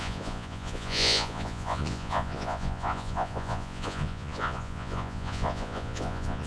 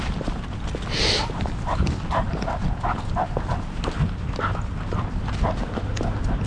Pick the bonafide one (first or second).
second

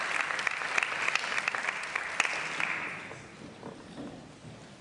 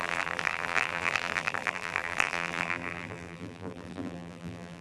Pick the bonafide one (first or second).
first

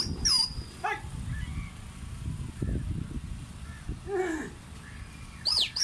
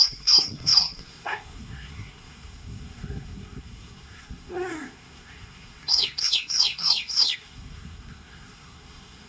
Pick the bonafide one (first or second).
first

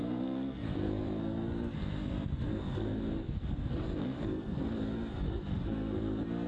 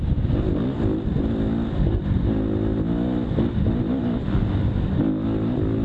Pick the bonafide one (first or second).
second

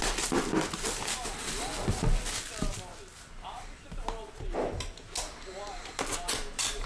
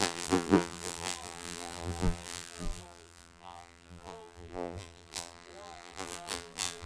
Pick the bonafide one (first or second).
first